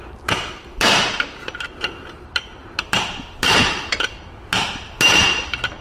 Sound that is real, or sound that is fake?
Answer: fake